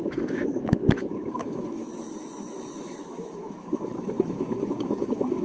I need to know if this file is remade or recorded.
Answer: remade